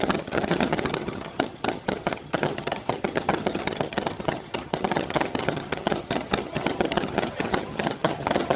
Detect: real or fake fake